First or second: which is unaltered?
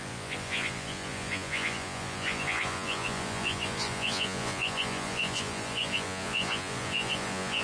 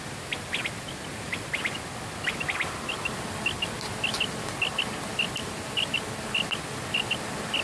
second